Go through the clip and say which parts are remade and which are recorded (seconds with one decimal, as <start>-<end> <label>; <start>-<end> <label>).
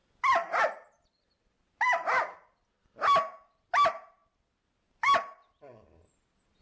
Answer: 0.0-6.6 recorded